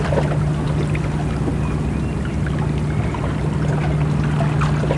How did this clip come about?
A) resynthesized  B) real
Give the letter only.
B